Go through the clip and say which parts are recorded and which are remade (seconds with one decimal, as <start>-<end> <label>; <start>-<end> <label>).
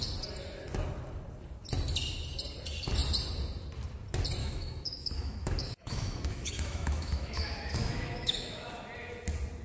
0.0-4.4 recorded; 4.4-8.7 remade; 8.7-9.6 recorded